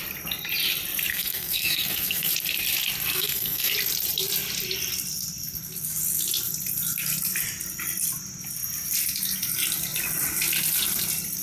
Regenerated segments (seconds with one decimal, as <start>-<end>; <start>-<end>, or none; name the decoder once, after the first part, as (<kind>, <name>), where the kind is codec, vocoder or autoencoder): 1.1-2.3 (codec, SNAC); 3.1-3.7